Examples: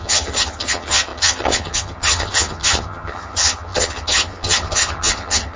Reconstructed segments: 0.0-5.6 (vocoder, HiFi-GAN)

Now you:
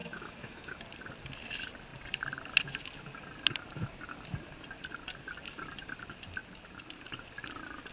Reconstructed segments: 0.0-0.8 (autoencoder, DAC-VAE)

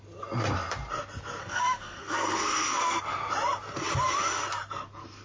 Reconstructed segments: 1.4-3.0 (codec, SNAC)

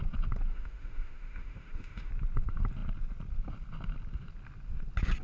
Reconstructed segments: 0.5-2.1 (autoencoder, DAC-VAE)